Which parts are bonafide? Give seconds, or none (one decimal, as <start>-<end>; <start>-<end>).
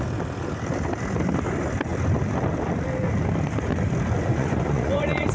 0.0-4.3